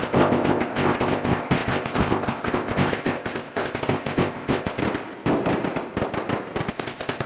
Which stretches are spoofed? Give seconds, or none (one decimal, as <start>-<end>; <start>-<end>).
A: 0.0-4.8; 6.7-7.3